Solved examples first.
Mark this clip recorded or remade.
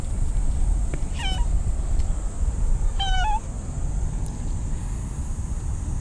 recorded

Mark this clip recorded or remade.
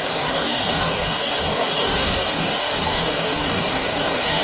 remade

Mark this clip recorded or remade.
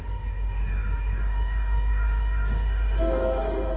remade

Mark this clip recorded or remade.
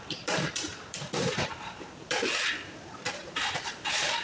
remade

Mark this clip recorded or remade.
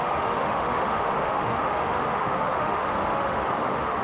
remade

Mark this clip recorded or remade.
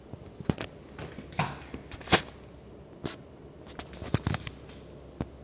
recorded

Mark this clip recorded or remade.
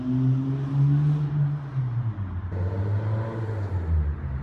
recorded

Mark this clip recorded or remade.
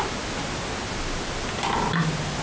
recorded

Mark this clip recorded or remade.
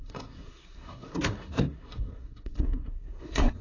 remade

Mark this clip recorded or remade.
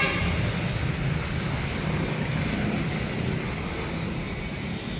recorded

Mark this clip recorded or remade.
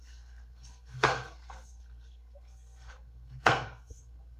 remade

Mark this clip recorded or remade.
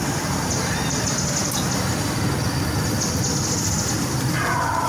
recorded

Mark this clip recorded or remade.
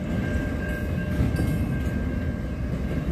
recorded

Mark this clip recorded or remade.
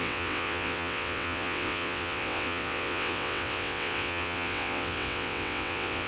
remade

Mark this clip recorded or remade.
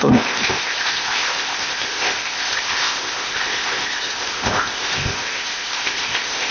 remade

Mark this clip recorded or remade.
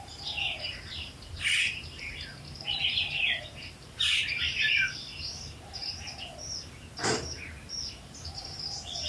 remade